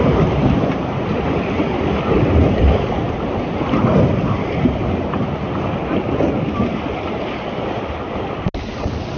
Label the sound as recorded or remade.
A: recorded